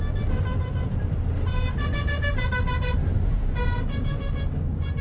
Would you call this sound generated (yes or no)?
no